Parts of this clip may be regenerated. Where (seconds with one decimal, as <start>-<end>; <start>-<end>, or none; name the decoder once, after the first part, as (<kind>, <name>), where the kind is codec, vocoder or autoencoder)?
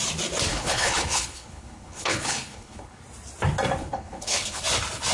0.5-3.0 (codec, HILCodec); 3.8-4.6